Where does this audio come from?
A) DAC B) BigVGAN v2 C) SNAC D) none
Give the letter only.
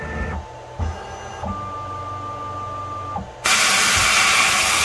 D